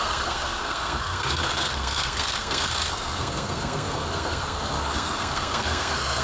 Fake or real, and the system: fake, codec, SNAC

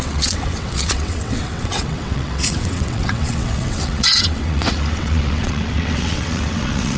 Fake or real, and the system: fake, vocoder, WaveNeXt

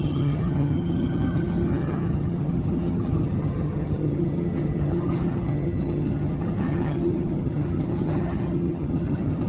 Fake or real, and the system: fake, vocoder, HiFi-GAN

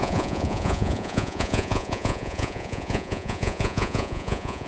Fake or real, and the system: fake, vocoder, Vocos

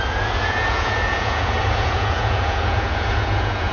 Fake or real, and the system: fake, vocoder, Vocos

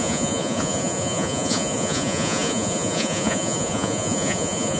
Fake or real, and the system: fake, vocoder, Vocos